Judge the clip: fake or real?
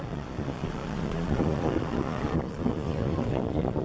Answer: fake